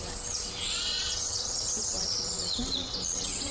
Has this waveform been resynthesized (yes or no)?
yes